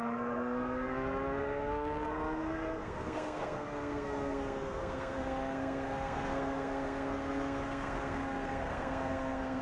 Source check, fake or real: fake